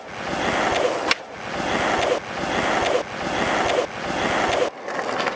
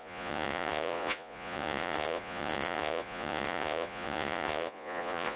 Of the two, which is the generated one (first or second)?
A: second